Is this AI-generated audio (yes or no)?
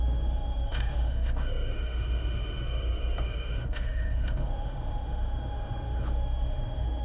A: yes